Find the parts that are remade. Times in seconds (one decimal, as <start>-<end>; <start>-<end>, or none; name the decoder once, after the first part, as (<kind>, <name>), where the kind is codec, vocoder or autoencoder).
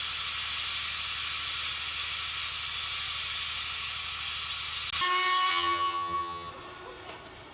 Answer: 5.5-6.5 (vocoder, HiFi-GAN)